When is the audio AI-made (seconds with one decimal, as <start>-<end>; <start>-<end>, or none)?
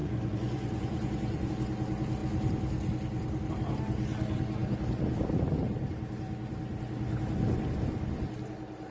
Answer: 0.0-1.5